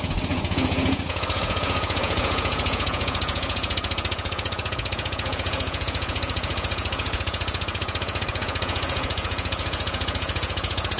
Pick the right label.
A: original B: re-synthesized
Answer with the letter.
B